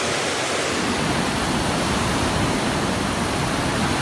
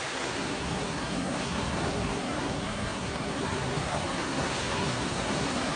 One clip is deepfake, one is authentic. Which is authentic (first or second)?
first